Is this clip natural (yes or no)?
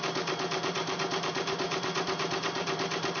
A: no